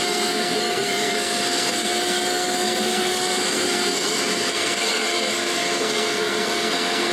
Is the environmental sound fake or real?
fake